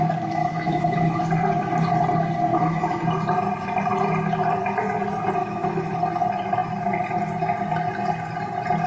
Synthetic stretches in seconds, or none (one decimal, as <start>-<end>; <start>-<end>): 0.4-1.2; 2.5-3.0; 5.4-6.0